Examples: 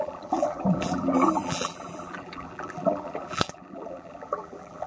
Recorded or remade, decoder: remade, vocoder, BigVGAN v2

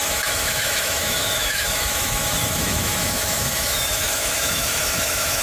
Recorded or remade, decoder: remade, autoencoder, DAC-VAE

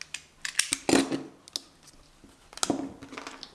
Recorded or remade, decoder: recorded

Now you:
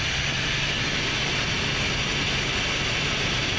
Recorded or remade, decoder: recorded